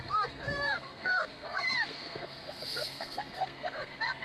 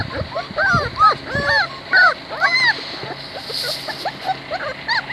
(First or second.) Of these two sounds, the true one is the second